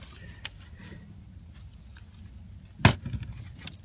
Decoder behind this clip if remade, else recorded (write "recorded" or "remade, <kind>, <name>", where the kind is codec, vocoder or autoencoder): recorded